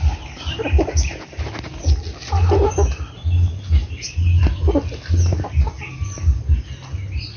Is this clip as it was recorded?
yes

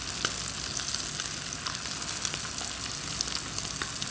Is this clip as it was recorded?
yes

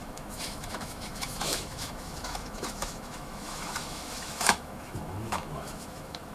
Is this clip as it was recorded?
no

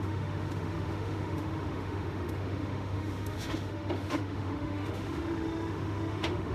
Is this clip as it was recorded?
no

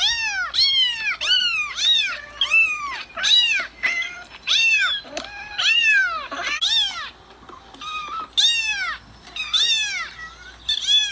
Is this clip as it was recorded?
yes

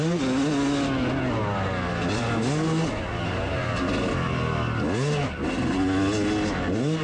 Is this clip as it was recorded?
yes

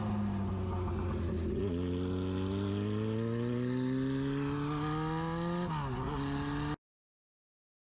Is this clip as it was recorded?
yes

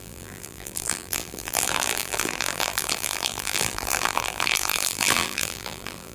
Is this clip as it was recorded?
no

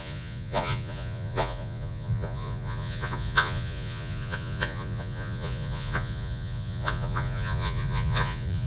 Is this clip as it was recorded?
no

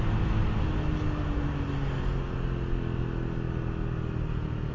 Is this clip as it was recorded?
yes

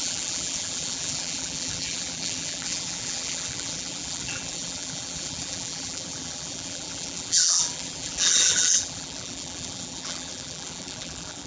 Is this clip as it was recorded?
no